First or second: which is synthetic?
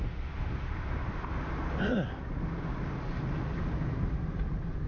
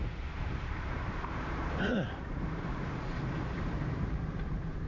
second